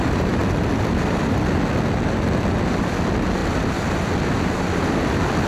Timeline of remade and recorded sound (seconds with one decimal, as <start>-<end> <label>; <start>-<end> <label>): 0.0-0.4 recorded; 0.4-1.4 remade; 1.4-3.4 recorded; 3.4-5.1 remade; 5.1-5.5 recorded

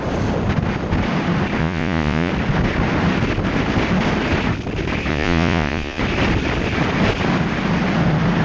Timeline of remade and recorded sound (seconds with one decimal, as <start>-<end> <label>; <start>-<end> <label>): 0.0-1.6 recorded; 1.6-2.3 remade; 2.3-5.1 recorded; 5.1-6.0 remade; 6.0-8.4 recorded

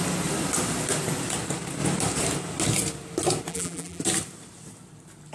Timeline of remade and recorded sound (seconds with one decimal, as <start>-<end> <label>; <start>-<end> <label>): 0.0-3.5 recorded; 3.5-4.0 remade; 4.0-5.3 recorded